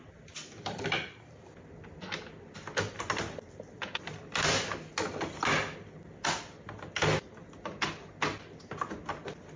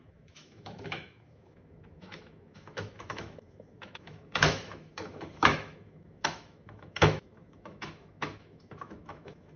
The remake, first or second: second